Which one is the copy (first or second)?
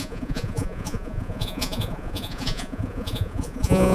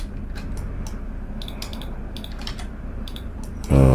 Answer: first